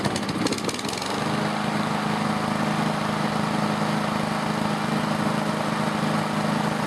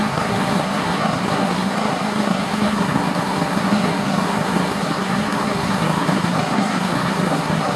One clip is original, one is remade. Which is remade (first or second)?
second